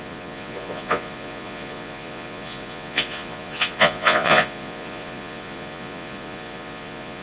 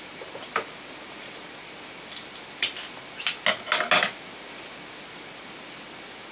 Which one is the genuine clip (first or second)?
second